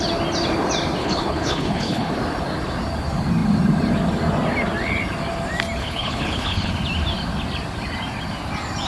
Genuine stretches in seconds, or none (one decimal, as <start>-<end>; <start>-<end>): 0.0-1.0; 2.1-5.8; 6.7-8.9